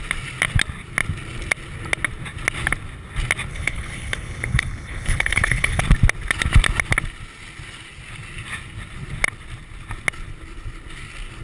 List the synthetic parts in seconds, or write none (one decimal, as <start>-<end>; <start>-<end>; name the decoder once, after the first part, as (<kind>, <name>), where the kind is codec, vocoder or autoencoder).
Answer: 3.5-5.8 (codec, HILCodec)